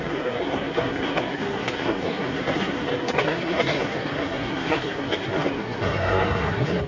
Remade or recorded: remade